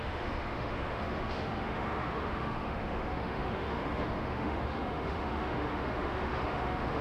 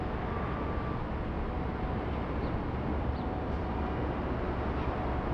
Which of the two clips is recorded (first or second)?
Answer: second